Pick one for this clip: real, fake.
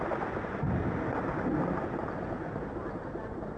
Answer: real